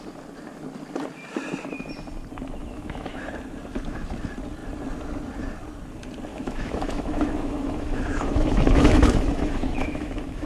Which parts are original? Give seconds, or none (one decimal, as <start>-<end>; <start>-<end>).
0.0-2.6; 3.3-6.3